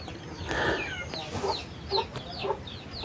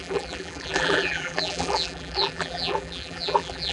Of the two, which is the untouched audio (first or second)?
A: first